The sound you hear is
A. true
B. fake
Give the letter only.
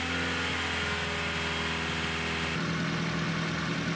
A